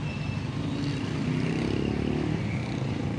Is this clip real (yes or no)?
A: yes